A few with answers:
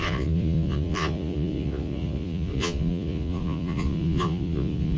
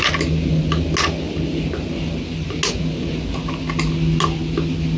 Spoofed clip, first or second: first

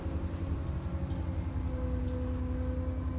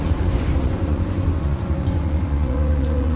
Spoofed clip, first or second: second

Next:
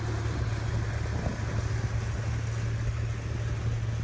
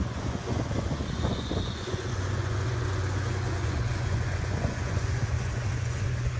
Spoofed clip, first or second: second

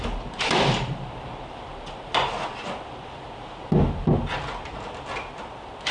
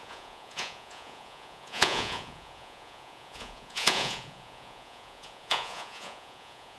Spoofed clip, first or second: second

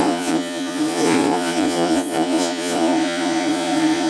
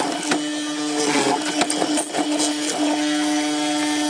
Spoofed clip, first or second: first